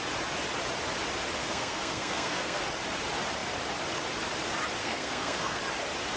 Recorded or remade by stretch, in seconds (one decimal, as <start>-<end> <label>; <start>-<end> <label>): 0.0-1.4 recorded; 1.4-2.6 remade; 2.6-4.8 recorded; 4.8-5.6 remade; 5.6-6.2 recorded